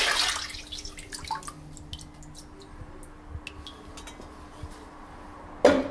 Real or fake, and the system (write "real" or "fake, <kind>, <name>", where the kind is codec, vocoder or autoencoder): real